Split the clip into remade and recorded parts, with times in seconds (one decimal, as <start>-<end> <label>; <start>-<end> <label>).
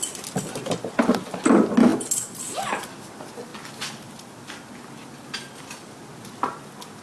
0.0-7.0 recorded